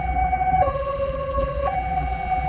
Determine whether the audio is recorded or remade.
remade